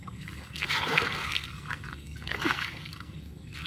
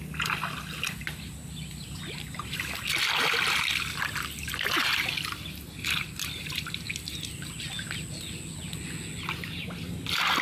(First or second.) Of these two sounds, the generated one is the first